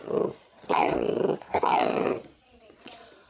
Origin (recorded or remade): remade